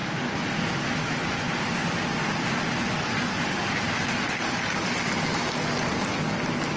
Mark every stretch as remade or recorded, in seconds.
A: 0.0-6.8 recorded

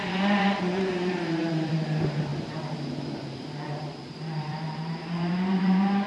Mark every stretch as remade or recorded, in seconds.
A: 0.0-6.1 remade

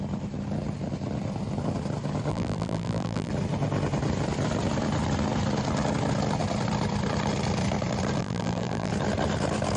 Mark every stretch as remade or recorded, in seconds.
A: 0.0-2.3 recorded; 2.3-3.3 remade; 3.3-8.2 recorded; 8.2-8.9 remade; 8.9-9.8 recorded